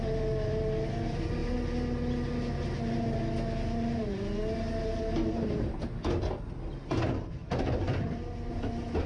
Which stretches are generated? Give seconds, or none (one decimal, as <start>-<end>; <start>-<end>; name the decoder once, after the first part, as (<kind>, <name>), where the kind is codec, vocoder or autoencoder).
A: 7.4-8.5 (vocoder, BigVGAN v2)